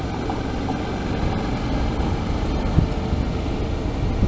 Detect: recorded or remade recorded